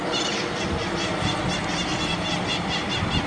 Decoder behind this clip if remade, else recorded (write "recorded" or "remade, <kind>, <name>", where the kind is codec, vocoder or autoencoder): recorded